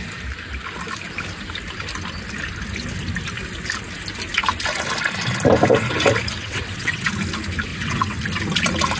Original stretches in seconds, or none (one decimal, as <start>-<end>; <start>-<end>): 0.0-6.4; 7.1-7.7; 8.2-9.0